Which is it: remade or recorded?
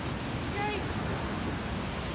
recorded